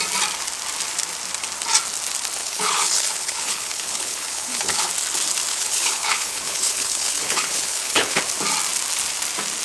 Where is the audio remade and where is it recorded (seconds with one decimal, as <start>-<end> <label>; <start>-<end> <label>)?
0.0-2.4 recorded; 2.4-4.9 remade; 4.9-5.5 recorded; 5.5-8.2 remade; 8.2-9.6 recorded